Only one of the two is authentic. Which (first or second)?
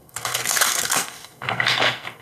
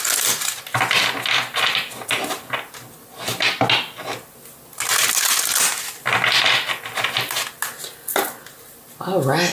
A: second